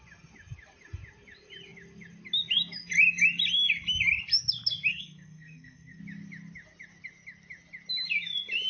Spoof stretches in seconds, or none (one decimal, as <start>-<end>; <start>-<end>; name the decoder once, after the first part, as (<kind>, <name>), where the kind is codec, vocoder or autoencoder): 4.9-6.0 (codec, SNAC)